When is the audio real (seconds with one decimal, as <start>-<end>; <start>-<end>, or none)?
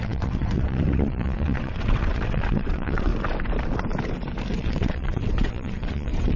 3.1-4.5